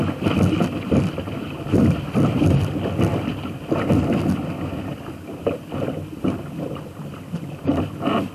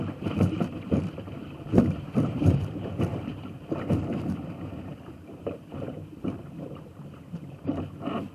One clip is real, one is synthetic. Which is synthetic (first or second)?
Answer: second